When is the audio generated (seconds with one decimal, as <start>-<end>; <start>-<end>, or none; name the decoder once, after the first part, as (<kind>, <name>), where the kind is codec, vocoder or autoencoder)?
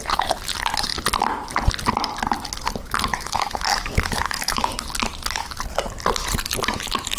3.1-4.7 (autoencoder, DAC-VAE)